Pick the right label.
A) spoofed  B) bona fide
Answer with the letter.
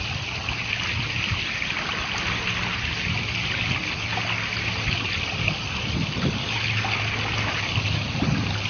B